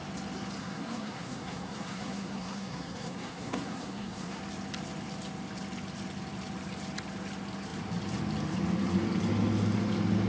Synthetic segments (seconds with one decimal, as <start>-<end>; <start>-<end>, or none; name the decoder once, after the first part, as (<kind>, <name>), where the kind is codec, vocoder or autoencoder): 0.6-4.4 (codec, SNAC)